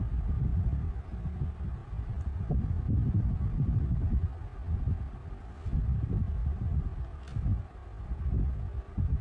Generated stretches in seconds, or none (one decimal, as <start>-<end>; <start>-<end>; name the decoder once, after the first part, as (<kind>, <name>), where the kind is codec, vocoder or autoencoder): 6.4-7.6 (vocoder, BigVGAN v2)